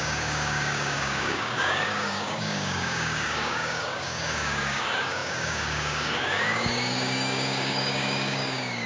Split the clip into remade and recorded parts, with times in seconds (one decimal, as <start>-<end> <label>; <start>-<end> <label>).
0.0-8.9 remade